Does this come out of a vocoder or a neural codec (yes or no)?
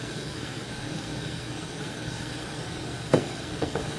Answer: yes